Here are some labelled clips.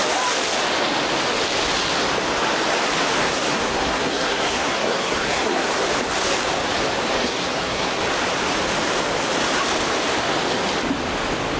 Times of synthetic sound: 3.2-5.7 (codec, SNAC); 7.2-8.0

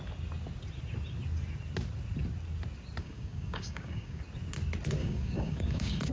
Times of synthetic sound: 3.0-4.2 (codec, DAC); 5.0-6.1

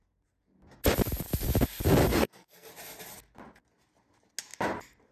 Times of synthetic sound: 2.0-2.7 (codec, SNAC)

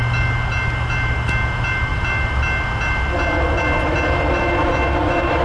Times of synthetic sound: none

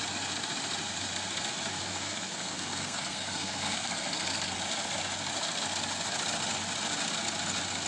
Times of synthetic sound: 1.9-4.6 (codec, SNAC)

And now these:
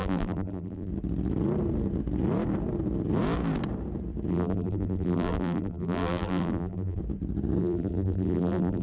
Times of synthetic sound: 0.0-0.9 (vocoder, BigVGAN v2); 4.3-7.0; 7.6-8.8